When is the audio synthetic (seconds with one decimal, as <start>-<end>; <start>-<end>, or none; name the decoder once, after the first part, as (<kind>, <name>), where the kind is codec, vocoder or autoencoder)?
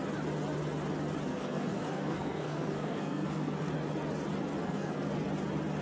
1.3-3.7 (codec, SNAC); 4.6-5.1